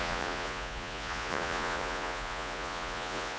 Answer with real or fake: fake